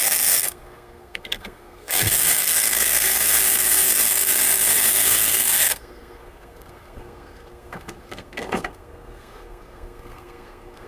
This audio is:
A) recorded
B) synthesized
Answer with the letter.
B